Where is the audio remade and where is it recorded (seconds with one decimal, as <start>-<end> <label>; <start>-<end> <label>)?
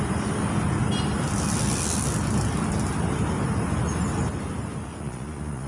0.0-4.9 recorded; 4.9-5.7 remade